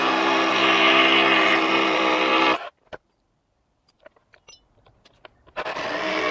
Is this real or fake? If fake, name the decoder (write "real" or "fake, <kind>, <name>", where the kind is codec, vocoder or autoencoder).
real